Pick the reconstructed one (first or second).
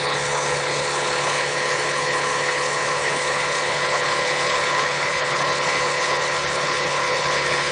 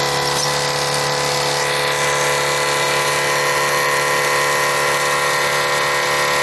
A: first